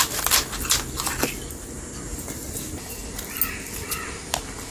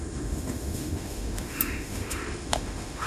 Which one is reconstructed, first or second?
second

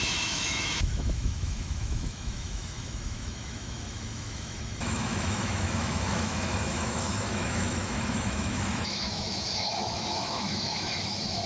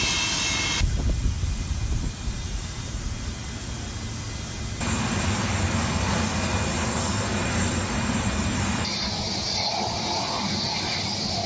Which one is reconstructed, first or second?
first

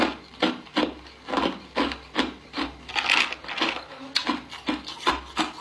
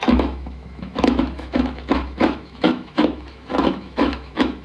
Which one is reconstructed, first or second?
second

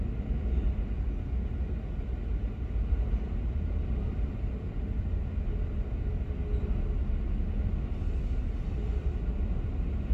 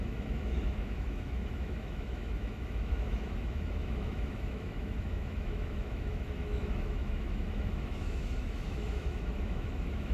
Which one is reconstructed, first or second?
second